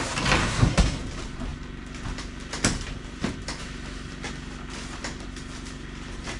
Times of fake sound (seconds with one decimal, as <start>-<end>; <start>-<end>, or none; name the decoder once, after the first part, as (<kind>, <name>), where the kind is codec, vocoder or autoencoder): 0.4-1.0 (codec, SNAC)